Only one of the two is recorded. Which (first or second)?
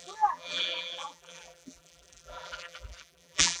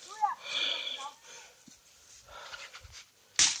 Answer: second